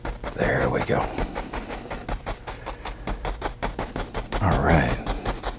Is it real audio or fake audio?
real